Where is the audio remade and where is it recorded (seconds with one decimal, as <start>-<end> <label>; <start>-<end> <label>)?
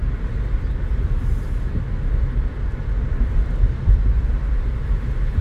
0.0-5.4 recorded